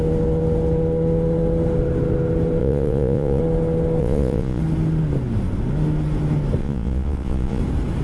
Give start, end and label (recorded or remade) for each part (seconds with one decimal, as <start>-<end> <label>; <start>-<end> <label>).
0.0-2.6 recorded; 2.6-3.4 remade; 3.4-4.0 recorded; 4.0-4.6 remade; 4.6-6.6 recorded; 6.6-7.6 remade; 7.6-8.0 recorded